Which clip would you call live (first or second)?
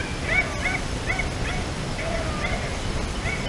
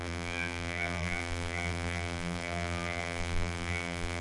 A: first